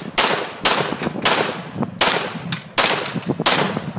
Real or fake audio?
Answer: real